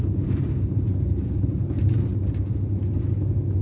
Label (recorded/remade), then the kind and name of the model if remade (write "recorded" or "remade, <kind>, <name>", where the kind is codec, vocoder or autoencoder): recorded